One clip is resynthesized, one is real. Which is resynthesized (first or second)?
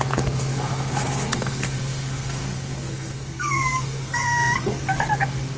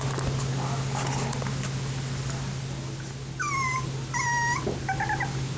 first